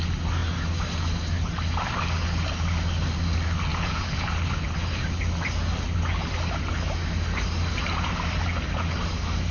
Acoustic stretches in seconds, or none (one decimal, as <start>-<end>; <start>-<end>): 0.0-3.7; 4.3-9.5